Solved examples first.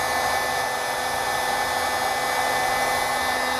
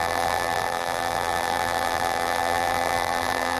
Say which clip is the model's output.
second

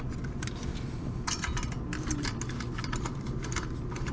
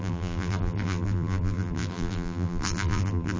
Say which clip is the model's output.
second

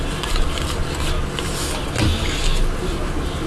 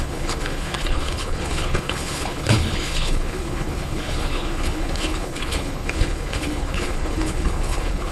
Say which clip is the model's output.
second